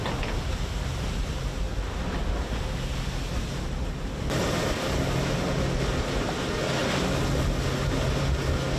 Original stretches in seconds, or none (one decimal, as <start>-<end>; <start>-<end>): 0.0-8.8